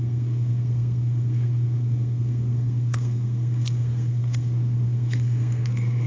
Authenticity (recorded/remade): remade